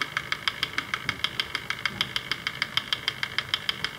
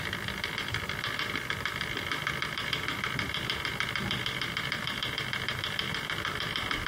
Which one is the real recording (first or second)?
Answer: first